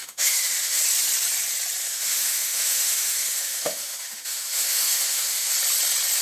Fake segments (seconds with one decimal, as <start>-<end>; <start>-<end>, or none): 0.0-0.8; 1.8-5.5